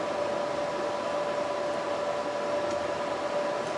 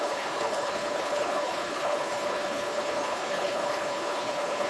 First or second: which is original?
first